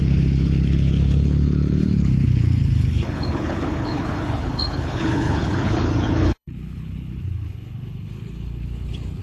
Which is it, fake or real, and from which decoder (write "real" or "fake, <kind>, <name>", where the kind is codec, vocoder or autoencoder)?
fake, codec, HILCodec